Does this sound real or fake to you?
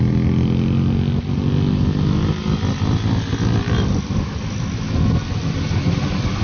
real